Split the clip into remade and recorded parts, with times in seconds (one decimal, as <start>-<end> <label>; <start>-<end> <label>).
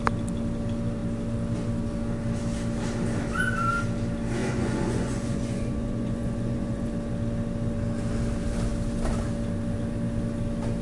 0.0-4.4 recorded; 4.4-6.9 remade; 6.9-10.8 recorded